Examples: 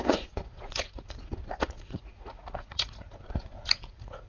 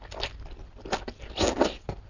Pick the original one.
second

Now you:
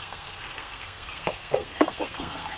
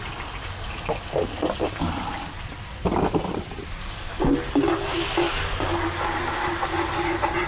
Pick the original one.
second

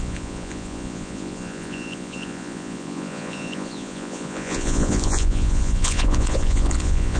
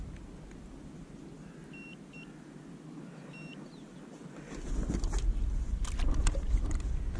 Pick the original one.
second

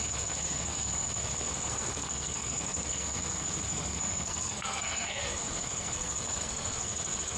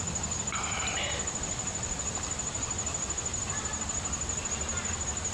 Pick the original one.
second